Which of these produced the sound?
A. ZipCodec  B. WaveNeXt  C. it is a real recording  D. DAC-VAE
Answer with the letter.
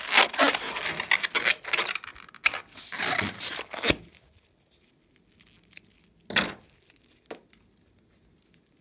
C